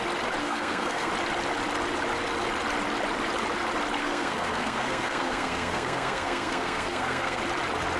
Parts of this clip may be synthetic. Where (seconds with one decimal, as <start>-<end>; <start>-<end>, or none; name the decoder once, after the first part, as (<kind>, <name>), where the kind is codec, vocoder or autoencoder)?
0.4-1.1 (codec, SNAC); 4.0-7.4